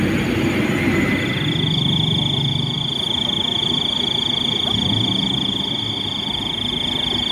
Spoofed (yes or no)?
no